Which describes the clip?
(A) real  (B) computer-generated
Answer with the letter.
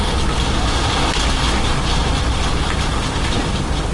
A